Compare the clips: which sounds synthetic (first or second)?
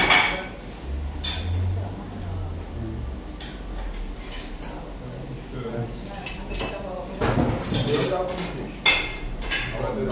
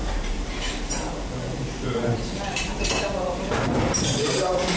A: second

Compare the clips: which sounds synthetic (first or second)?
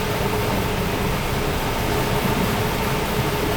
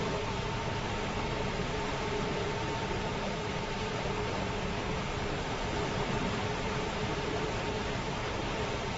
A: second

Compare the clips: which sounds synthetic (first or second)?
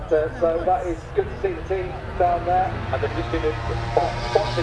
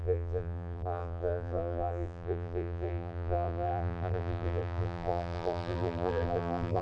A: second